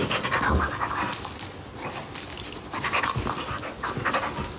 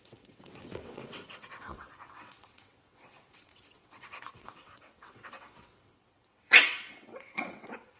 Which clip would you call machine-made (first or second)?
second